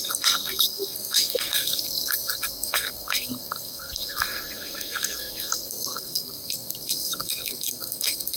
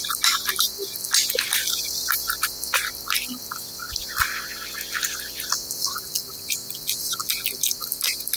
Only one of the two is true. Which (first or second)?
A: second